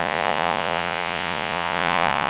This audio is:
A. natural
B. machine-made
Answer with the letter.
B